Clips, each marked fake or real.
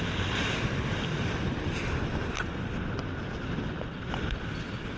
real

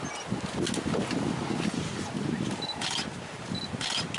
real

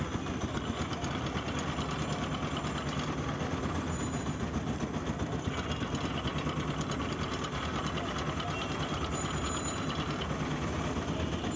real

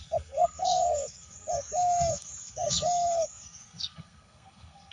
fake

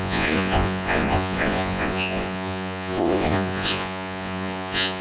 fake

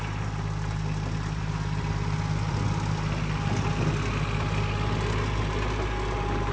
real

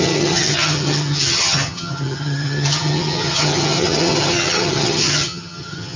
fake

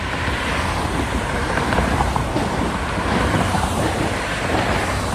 fake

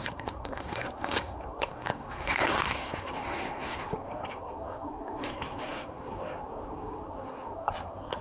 fake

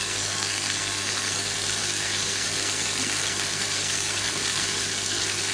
fake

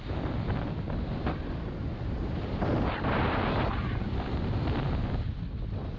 real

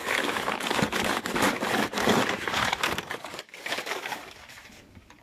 fake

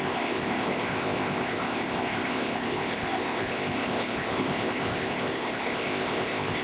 fake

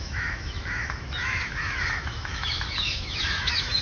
fake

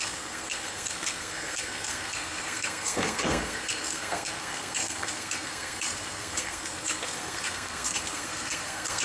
fake